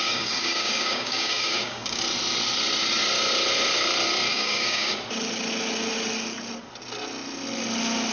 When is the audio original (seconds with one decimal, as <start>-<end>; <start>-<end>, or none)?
2.0-4.3; 4.9-8.1